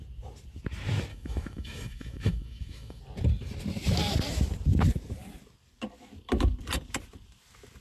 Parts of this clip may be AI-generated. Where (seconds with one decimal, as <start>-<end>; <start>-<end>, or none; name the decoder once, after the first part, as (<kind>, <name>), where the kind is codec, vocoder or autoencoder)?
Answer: 1.1-3.0 (autoencoder, DAC-VAE)